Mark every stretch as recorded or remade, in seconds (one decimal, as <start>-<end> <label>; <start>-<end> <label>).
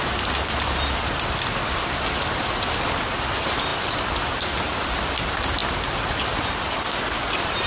0.0-7.7 recorded